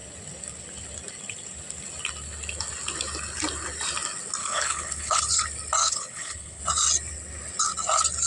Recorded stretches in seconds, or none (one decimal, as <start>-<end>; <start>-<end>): 0.0-4.4; 5.2-5.8; 6.6-8.3